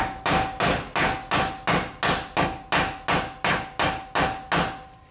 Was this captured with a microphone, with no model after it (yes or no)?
yes